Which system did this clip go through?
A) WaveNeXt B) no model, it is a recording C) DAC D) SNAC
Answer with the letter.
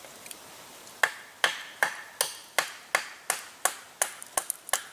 B